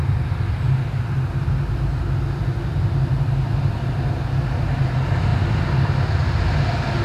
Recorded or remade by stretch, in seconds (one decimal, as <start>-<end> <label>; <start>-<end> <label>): 0.0-7.0 recorded